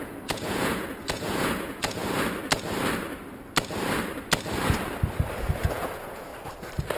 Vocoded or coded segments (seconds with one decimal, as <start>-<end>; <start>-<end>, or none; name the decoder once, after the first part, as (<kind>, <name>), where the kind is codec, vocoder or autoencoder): 0.0-2.0 (vocoder, Vocos); 5.5-6.3